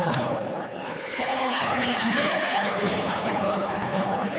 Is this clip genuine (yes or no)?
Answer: no